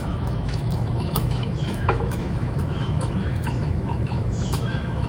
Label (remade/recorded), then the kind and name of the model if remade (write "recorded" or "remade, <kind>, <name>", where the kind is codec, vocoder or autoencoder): remade, autoencoder, DAC-VAE